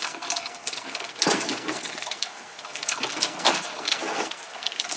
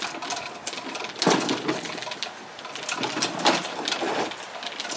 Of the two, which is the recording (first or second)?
second